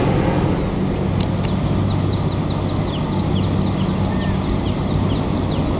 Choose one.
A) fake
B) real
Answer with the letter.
B